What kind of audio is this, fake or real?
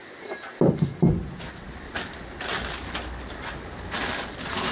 real